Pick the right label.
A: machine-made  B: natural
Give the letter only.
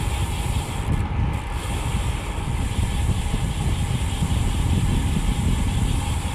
B